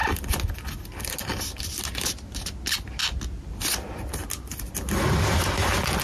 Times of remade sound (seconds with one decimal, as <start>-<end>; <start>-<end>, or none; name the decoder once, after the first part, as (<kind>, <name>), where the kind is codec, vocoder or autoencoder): none